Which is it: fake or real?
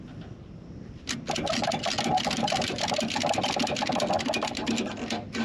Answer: real